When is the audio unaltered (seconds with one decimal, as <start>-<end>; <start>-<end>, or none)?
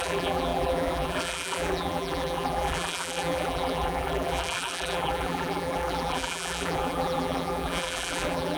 none